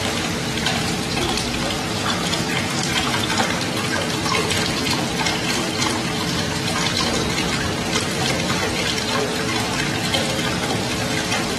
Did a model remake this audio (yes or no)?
yes